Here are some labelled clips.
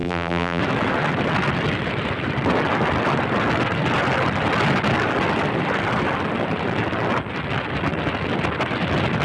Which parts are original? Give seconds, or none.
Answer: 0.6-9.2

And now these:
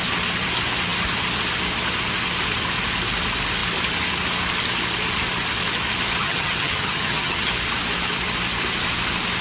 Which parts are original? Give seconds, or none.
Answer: 0.0-6.2; 7.5-9.4